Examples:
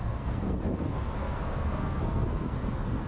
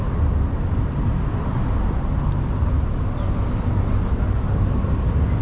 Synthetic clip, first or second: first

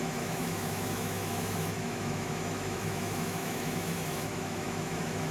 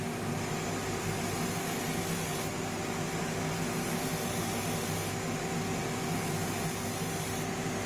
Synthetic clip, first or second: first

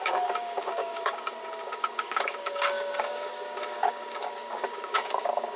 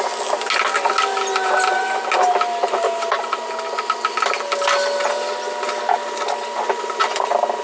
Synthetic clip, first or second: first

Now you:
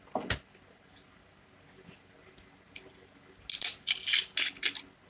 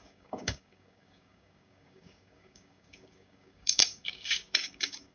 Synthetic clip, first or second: second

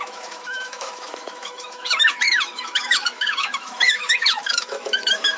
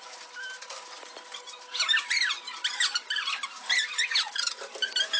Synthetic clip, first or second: first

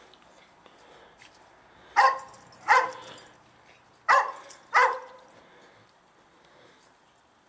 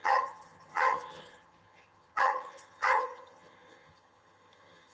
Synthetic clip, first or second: second